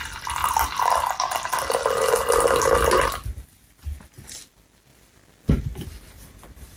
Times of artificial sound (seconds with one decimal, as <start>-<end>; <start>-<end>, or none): 0.0-0.4; 4.5-4.9; 5.5-6.8